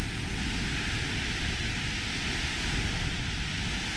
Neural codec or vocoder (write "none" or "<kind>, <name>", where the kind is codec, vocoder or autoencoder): none